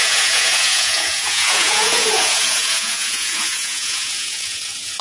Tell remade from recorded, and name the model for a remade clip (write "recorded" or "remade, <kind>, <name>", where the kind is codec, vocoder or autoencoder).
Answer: remade, vocoder, Vocos